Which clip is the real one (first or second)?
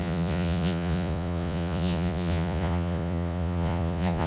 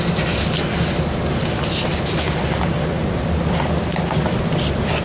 second